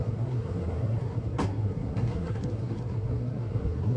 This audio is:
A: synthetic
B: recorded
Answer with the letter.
A